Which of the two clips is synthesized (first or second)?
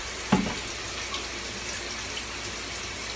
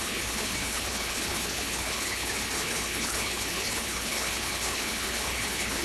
second